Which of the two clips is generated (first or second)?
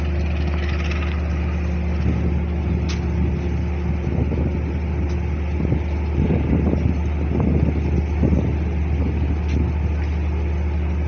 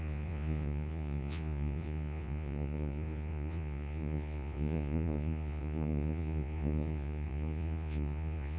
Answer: second